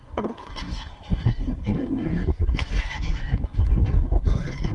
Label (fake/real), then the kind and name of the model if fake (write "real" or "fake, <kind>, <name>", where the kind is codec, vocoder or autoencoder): fake, codec, SNAC